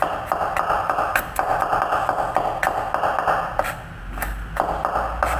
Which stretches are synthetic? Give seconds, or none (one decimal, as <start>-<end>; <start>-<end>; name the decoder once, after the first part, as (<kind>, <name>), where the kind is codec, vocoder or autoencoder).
none